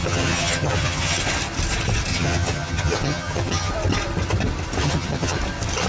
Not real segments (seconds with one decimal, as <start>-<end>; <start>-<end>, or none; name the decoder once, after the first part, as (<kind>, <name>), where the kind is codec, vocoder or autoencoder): 0.0-1.2 (vocoder, HiFi-GAN); 2.1-3.7; 4.8-5.4